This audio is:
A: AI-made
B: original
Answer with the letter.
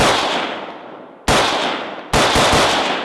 B